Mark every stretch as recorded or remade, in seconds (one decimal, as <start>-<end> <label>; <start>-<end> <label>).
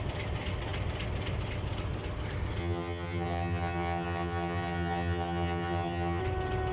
0.0-2.6 recorded; 2.6-6.2 remade; 6.2-6.7 recorded